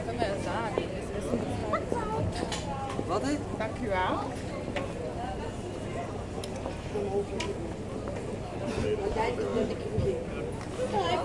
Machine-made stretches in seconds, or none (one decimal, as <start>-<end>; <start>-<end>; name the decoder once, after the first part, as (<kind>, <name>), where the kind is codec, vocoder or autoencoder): none